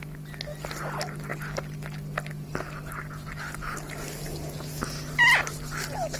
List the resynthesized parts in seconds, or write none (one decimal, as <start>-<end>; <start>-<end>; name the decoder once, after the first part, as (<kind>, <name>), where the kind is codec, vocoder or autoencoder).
none